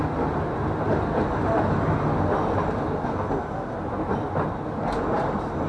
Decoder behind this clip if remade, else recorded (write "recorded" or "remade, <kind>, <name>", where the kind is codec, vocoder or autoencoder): recorded